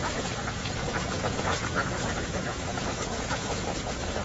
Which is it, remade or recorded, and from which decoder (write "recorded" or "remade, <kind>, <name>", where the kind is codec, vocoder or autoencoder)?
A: remade, vocoder, Vocos